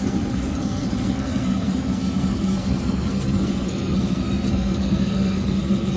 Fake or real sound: fake